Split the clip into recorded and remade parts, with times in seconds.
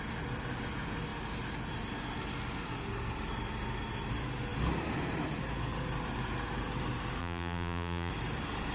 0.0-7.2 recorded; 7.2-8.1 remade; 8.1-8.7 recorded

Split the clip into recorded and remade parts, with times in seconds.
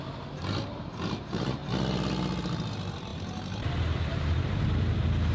0.0-1.6 remade; 1.6-2.7 recorded; 2.7-5.3 remade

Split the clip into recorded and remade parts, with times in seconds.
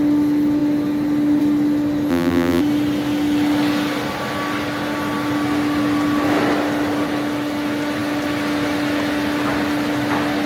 0.0-2.1 recorded; 2.1-2.6 remade; 2.6-10.5 recorded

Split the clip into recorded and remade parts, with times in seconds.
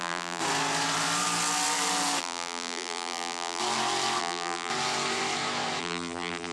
0.0-0.4 remade; 0.4-2.2 recorded; 2.2-3.6 remade; 3.6-4.2 recorded; 4.2-4.7 remade; 4.7-5.8 recorded; 5.8-6.5 remade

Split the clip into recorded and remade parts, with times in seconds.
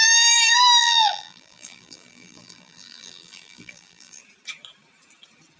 0.0-0.8 recorded; 0.8-4.2 remade; 4.2-5.6 recorded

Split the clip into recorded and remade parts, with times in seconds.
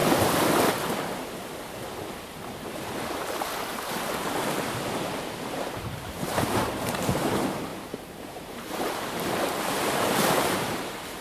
0.0-4.9 recorded; 4.9-11.2 remade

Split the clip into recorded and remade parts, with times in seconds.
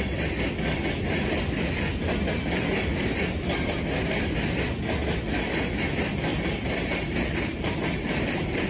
0.0-6.3 recorded; 6.3-8.7 remade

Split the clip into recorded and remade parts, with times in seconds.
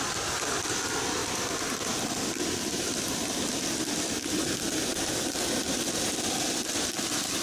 0.0-1.2 recorded; 1.2-4.1 remade; 4.1-7.4 recorded